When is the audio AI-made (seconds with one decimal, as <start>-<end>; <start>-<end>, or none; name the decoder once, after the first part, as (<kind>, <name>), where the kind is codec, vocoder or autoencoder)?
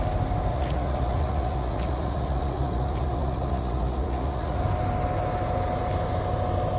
0.5-4.6 (vocoder, Vocos)